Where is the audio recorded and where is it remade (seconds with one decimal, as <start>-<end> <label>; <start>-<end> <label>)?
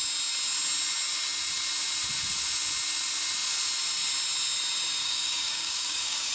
0.0-5.0 recorded; 5.0-6.3 remade